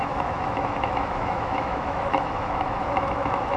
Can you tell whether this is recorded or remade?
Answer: remade